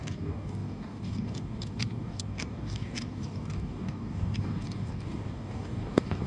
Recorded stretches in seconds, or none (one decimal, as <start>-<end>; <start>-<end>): none